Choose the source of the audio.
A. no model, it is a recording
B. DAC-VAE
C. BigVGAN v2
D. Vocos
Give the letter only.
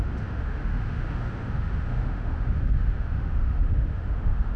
B